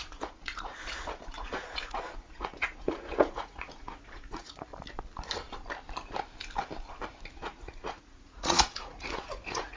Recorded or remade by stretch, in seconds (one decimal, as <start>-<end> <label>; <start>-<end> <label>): 0.0-4.7 remade; 4.7-7.3 recorded; 7.3-9.8 remade